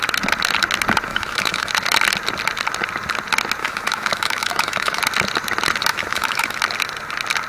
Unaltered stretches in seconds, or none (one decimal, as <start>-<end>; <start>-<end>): 0.0-1.1; 1.7-3.6; 5.0-5.9; 6.6-7.5